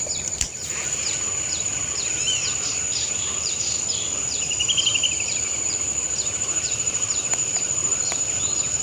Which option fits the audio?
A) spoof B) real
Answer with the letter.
A